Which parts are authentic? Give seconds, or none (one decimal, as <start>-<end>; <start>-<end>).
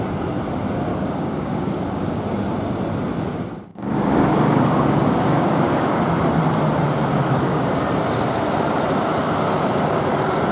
0.0-0.9; 2.2-3.7; 6.0-7.0; 7.8-10.5